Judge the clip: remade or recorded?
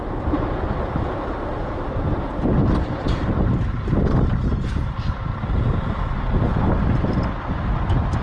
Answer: remade